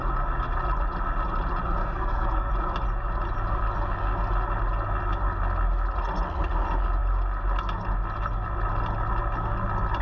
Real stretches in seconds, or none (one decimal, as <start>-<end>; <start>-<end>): 0.0-1.8; 2.5-10.0